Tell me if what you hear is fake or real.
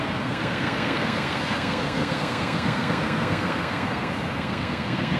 fake